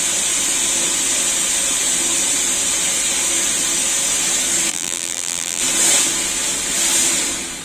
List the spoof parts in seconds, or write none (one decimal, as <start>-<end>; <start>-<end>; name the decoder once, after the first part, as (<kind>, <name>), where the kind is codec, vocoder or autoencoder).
4.7-5.6 (vocoder, BigVGAN v2)